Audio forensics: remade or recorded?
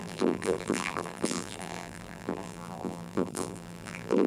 remade